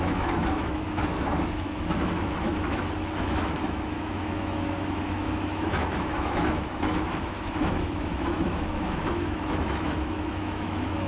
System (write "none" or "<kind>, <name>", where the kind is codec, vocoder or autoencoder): autoencoder, DAC-VAE